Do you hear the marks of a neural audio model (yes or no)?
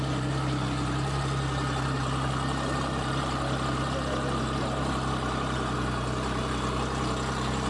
no